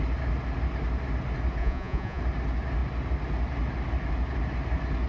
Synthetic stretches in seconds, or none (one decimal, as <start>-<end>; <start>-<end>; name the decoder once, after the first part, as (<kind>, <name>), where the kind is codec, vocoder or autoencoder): 1.6-2.2 (vocoder, Vocos)